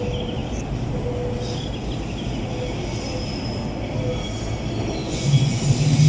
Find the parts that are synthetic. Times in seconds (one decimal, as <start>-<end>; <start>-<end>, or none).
5.0-5.6